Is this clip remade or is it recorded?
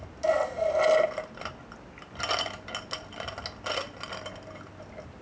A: recorded